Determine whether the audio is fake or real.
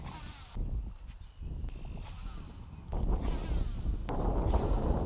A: real